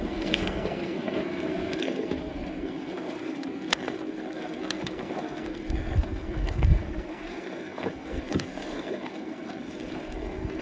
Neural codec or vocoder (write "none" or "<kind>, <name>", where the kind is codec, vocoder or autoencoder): codec, SNAC